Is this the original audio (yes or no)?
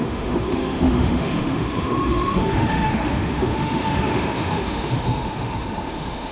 no